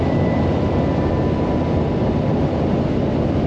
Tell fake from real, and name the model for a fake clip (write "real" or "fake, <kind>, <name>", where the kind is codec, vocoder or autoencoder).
fake, vocoder, BigVGAN v2